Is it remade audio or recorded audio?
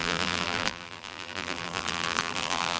remade